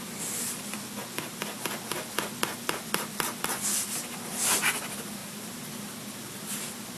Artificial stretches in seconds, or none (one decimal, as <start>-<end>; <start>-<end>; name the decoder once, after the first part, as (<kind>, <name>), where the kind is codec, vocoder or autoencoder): 5.2-5.7 (vocoder, BigVGAN v2)